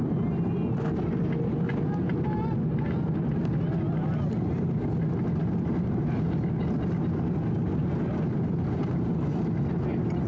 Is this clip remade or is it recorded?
recorded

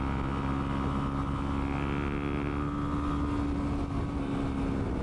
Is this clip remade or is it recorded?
recorded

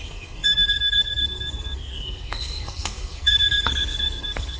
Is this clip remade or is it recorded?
remade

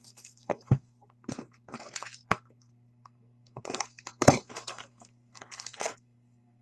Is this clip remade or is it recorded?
remade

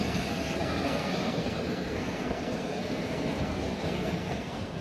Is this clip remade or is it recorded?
remade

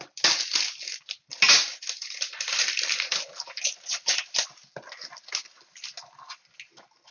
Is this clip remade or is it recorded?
recorded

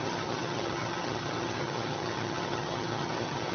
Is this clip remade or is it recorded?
remade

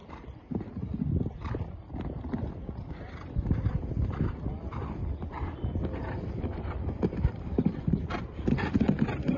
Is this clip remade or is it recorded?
remade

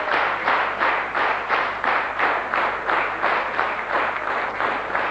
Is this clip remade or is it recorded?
remade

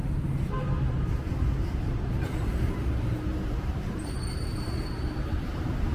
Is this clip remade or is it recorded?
remade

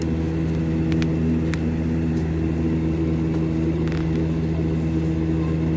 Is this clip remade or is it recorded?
recorded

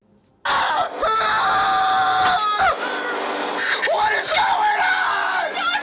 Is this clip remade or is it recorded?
recorded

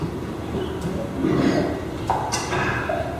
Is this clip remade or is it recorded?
recorded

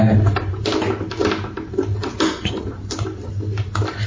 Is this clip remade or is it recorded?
recorded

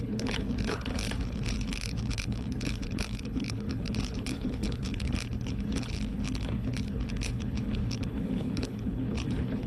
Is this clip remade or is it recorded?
remade